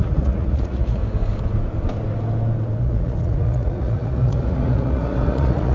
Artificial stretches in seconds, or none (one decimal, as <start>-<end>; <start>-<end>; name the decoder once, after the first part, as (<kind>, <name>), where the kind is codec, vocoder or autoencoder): 0.0-1.0 (vocoder, Vocos); 2.8-5.7